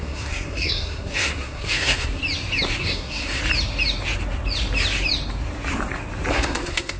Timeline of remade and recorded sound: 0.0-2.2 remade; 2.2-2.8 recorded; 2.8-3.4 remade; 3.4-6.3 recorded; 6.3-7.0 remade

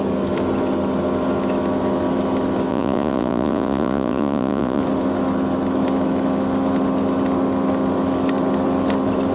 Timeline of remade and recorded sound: 0.0-2.7 recorded; 2.7-4.8 remade; 4.8-9.3 recorded

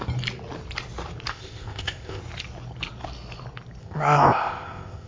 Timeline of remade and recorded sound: 0.0-1.3 recorded; 1.3-2.2 remade; 2.2-3.8 recorded; 3.8-5.1 remade

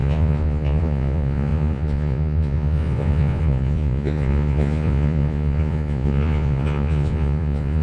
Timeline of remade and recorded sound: 0.0-7.8 remade

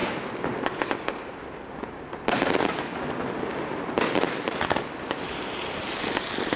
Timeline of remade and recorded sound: 0.0-6.6 recorded

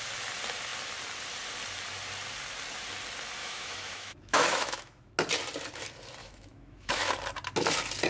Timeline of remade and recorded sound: 0.0-3.4 recorded; 3.4-5.1 remade; 5.1-6.2 recorded; 6.2-7.1 remade; 7.1-8.1 recorded

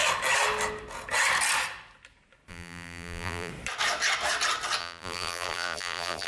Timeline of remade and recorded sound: 0.0-2.5 recorded; 2.5-3.5 remade; 3.5-4.8 recorded; 4.8-6.3 remade

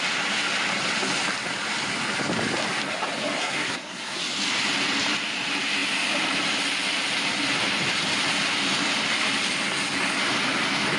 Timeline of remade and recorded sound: 0.0-3.4 recorded; 3.4-4.2 remade; 4.2-11.0 recorded